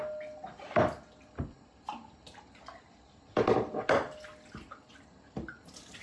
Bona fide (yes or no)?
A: yes